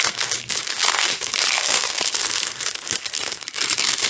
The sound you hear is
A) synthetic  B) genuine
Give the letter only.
A